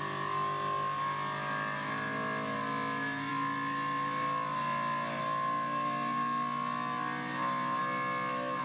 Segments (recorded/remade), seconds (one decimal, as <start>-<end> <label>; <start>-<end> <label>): 0.0-8.6 recorded